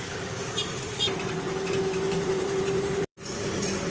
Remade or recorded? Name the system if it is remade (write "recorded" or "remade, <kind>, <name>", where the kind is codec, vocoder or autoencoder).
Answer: remade, vocoder, BigVGAN v2